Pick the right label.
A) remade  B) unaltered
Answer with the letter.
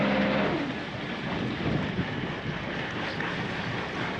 B